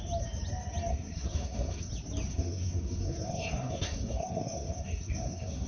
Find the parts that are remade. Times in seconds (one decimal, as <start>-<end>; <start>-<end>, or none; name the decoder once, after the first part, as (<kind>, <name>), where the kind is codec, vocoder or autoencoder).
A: 0.9-1.9 (codec, SNAC); 2.3-5.7